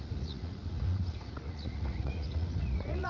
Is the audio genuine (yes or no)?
no